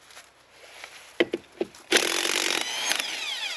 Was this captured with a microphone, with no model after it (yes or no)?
yes